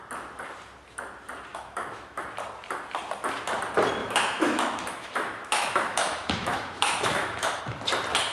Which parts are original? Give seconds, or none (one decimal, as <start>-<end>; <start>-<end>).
0.0-1.5; 2.2-4.0; 7.6-8.3